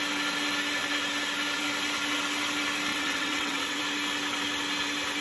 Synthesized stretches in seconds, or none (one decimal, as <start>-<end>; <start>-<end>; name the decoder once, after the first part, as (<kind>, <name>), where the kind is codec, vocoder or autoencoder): 2.9-3.8 (vocoder, WaveNeXt)